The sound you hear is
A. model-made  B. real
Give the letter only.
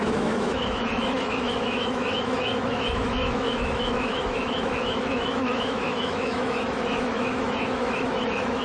A